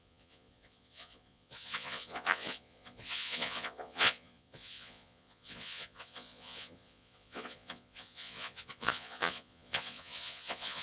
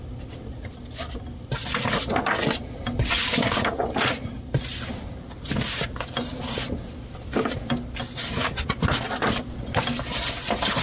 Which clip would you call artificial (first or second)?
first